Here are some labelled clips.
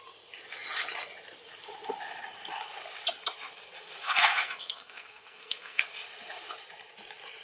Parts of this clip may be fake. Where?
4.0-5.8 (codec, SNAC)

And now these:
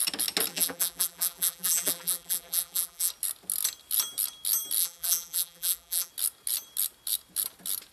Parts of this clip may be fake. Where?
0.5-3.1 (vocoder, BigVGAN v2); 4.8-6.1

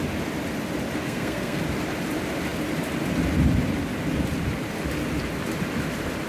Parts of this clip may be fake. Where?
1.0-1.6 (codec, SNAC)

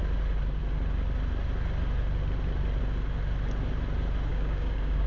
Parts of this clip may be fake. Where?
4.3-5.1 (codec, DAC)

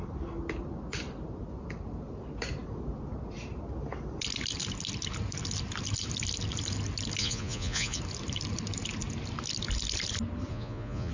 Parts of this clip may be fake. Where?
7.2-8.0 (vocoder, Vocos); 10.5-11.1